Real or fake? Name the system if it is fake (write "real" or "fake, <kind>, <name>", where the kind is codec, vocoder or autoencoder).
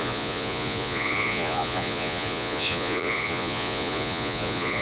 fake, vocoder, Vocos